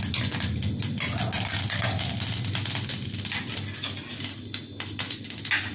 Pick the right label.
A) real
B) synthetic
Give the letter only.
A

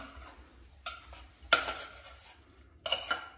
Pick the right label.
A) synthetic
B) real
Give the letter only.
B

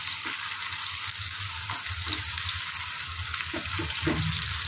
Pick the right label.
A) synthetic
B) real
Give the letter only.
B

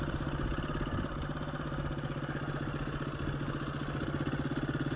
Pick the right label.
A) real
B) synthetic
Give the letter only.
A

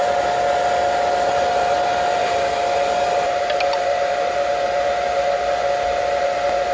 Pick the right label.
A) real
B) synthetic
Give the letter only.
A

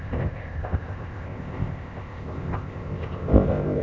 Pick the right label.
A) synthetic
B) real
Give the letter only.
A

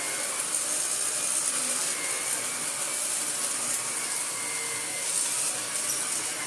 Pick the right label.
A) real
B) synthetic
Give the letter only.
A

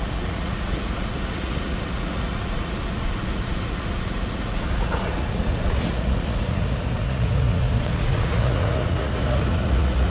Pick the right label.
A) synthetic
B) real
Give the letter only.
A